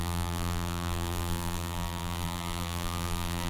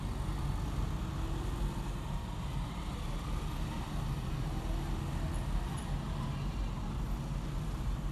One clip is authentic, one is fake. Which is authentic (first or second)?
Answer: second